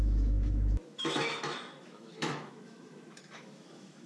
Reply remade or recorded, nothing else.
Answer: remade